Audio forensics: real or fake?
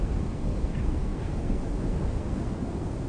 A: fake